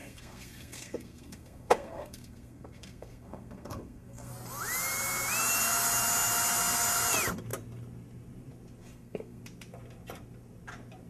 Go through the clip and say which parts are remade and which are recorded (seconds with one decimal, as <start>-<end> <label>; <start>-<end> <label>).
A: 0.0-4.3 remade; 4.3-8.8 recorded; 8.8-9.4 remade; 9.4-11.1 recorded